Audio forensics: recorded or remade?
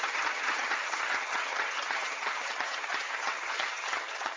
remade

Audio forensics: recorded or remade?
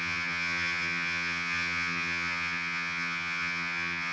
remade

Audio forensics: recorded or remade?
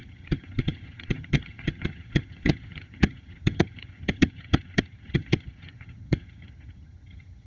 remade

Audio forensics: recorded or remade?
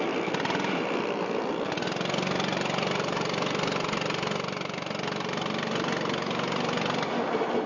recorded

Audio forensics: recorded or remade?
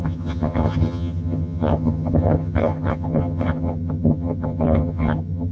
remade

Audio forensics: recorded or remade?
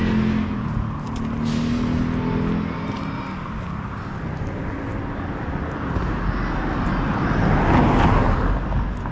recorded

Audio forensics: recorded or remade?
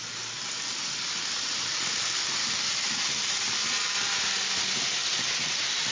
recorded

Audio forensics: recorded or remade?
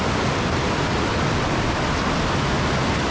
recorded